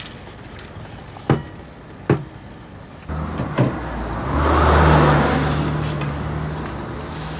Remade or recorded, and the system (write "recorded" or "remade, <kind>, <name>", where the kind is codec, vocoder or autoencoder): recorded